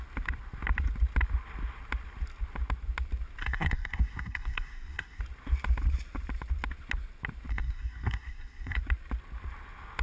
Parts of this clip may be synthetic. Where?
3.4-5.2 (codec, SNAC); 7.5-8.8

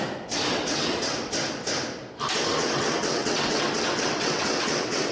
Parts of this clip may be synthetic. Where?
0.5-1.3 (vocoder, WaveNeXt); 2.5-5.1